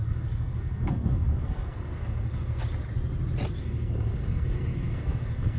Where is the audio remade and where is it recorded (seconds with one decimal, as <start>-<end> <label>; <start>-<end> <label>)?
0.0-2.6 remade; 2.6-3.6 recorded; 3.6-5.6 remade